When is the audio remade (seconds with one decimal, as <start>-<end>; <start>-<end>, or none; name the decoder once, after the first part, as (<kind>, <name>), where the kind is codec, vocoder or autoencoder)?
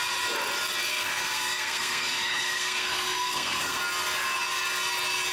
0.9-3.8 (codec, SNAC)